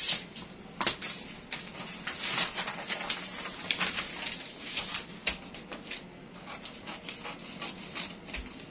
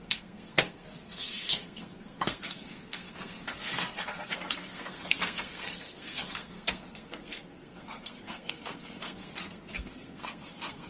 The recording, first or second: first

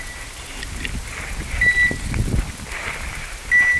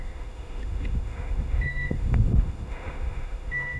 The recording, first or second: first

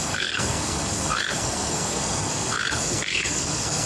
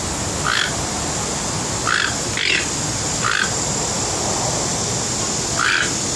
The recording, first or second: second